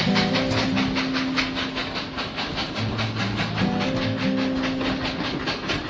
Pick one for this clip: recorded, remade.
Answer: recorded